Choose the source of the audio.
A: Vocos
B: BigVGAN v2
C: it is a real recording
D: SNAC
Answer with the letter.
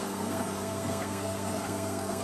D